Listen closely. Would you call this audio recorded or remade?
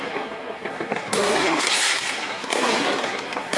remade